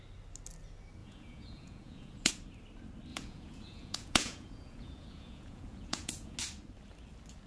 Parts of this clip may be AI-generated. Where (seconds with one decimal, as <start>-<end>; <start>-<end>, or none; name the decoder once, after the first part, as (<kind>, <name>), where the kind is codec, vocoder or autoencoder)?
1.0-2.3 (vocoder, Vocos); 3.1-6.4